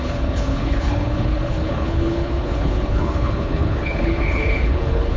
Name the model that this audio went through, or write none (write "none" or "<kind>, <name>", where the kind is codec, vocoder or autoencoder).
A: codec, HILCodec